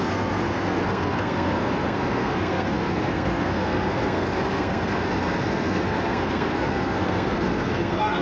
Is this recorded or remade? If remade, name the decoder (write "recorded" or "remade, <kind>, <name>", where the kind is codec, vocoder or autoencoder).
remade, codec, SNAC